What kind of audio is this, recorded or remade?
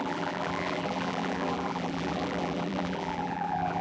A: remade